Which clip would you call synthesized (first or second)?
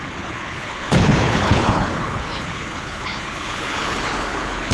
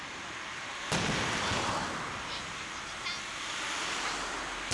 first